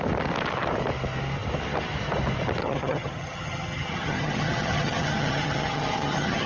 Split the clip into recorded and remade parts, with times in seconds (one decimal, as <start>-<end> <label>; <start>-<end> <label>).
0.0-2.6 recorded; 2.6-6.5 remade